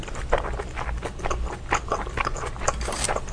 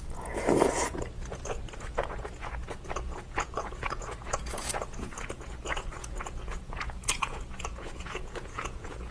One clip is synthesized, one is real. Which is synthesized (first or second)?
second